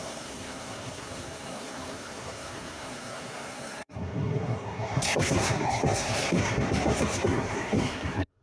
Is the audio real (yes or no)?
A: no